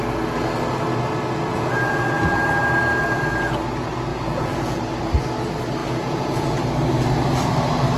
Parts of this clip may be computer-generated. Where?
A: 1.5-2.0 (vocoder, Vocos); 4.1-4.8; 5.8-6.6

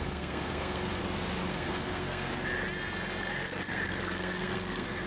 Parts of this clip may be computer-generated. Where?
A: 0.0-1.0 (codec, SNAC); 1.5-2.3; 3.3-5.1

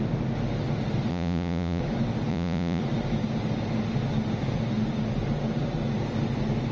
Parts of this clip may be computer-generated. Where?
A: 1.1-1.8 (vocoder, Vocos); 2.3-2.8

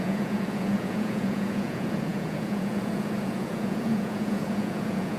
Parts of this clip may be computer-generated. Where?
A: 0.0-5.2 (vocoder, Vocos)